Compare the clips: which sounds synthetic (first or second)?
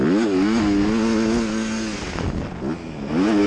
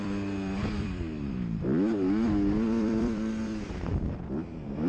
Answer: second